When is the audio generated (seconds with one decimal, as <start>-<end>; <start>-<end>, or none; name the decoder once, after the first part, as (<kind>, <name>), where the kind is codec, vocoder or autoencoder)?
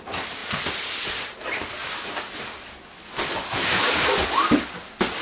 none